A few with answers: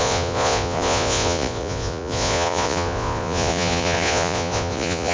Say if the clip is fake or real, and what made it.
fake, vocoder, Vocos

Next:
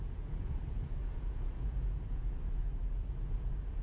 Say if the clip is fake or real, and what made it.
fake, vocoder, Vocos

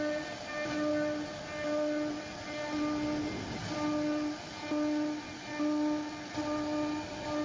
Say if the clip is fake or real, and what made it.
real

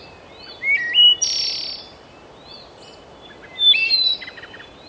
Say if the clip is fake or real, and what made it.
real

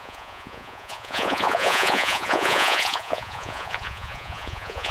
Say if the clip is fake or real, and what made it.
fake, vocoder, Vocos